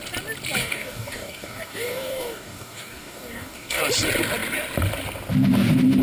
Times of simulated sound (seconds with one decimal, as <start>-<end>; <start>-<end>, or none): 0.6-3.8